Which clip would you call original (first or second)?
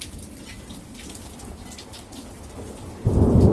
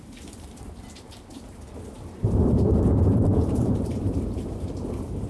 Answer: first